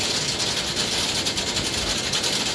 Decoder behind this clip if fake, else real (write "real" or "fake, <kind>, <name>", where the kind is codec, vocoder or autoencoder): real